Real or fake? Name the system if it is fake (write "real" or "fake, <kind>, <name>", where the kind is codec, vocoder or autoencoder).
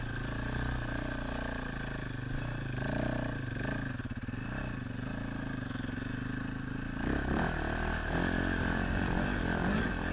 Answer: real